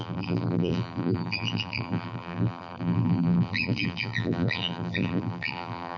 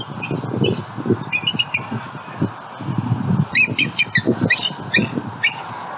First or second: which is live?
second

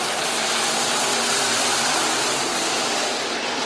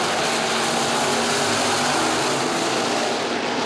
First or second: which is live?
second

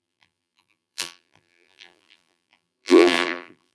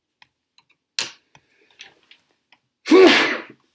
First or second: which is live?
second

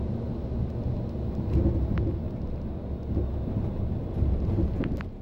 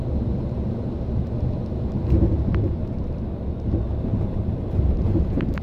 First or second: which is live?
first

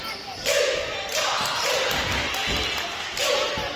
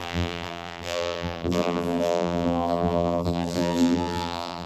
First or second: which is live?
first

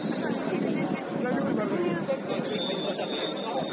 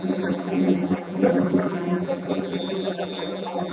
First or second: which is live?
first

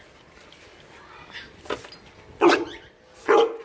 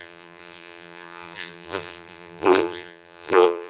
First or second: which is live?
first